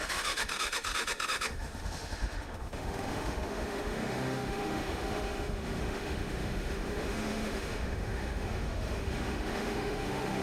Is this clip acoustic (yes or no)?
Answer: no